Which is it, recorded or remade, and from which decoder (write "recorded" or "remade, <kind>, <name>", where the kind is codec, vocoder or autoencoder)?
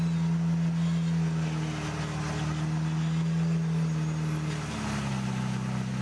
recorded